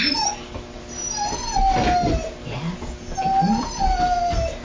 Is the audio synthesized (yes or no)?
no